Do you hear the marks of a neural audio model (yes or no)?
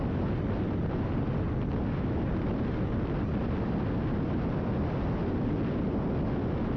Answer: no